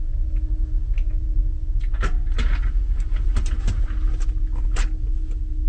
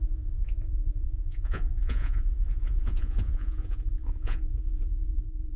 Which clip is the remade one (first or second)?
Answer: second